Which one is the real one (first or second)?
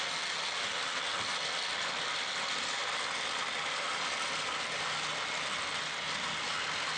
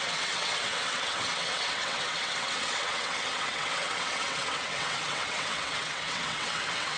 first